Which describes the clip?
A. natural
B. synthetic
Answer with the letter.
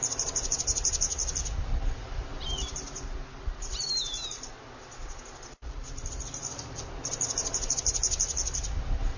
A